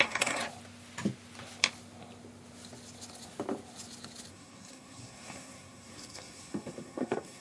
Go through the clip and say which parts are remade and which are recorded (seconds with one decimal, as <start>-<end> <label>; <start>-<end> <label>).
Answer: 0.0-0.4 remade; 0.4-4.3 recorded; 4.3-7.4 remade

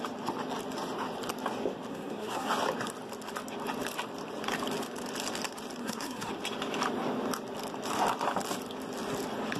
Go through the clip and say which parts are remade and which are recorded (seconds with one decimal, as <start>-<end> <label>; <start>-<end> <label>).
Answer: 0.0-1.9 recorded; 1.9-2.5 remade; 2.5-5.8 recorded; 5.8-6.3 remade; 6.3-9.6 recorded

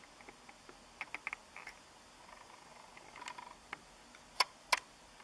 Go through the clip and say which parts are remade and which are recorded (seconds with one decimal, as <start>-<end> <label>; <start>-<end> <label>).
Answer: 0.0-5.2 recorded